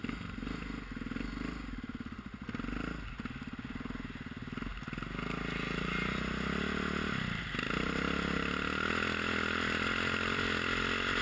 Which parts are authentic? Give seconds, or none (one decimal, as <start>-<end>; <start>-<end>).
0.0-11.2